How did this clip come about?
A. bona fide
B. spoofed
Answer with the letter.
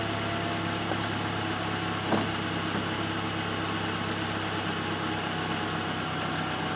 A